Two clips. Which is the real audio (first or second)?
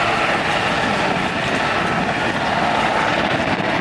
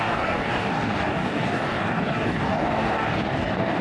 first